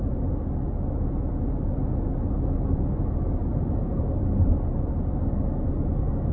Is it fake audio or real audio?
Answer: real